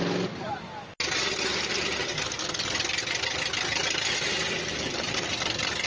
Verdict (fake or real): real